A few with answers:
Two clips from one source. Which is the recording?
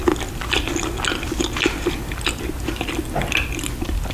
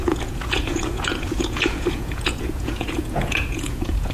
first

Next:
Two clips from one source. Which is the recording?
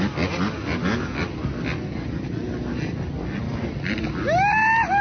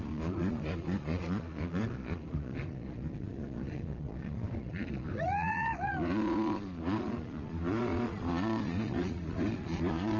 first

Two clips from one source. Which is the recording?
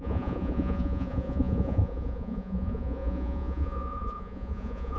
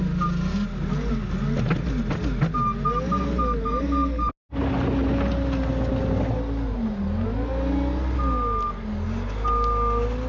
second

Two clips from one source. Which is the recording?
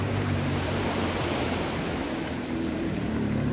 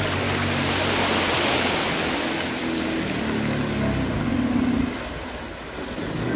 second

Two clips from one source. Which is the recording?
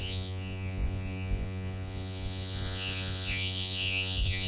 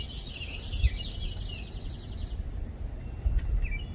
second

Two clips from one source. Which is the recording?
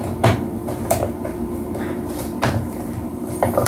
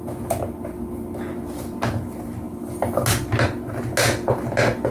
second